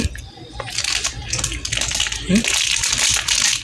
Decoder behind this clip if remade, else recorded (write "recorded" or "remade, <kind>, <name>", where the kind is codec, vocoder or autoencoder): recorded